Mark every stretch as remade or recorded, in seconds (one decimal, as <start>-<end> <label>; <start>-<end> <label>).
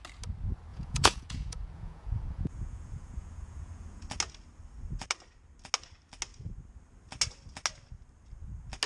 0.0-0.7 recorded; 0.7-4.0 remade; 4.0-8.9 recorded